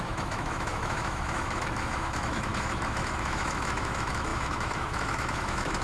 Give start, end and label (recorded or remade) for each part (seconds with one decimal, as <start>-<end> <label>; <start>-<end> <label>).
0.0-5.8 remade